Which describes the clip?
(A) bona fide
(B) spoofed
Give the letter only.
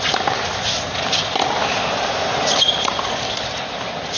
A